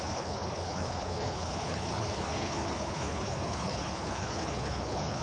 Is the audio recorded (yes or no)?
no